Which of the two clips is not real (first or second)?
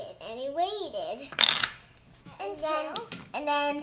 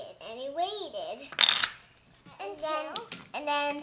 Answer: first